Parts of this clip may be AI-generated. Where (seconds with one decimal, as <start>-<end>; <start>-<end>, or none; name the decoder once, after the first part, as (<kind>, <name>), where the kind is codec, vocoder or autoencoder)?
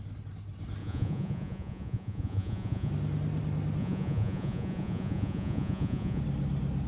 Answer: 0.8-2.9 (vocoder, Vocos); 3.8-6.2